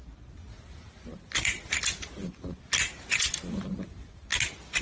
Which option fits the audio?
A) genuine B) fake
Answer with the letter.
A